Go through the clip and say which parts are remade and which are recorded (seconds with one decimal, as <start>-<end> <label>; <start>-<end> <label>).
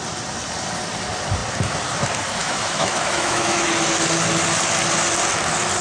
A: 0.0-2.4 recorded; 2.4-3.7 remade; 3.7-5.8 recorded